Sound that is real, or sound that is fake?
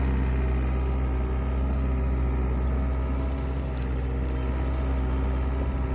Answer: real